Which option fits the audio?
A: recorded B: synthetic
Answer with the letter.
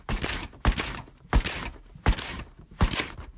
A